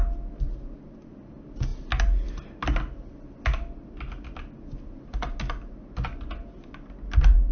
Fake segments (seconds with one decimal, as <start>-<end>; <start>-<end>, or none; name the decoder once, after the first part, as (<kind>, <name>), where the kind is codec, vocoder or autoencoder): none